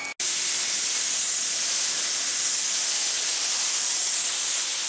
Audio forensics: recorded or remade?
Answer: recorded